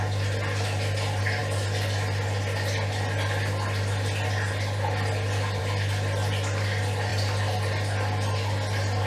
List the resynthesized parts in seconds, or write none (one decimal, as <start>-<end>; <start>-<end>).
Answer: none